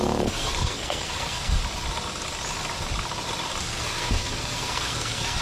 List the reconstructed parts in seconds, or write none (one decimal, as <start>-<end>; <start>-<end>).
0.0-1.6; 3.6-5.4